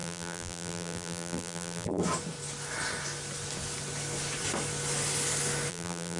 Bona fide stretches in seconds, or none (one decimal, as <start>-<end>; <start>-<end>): 2.0-5.7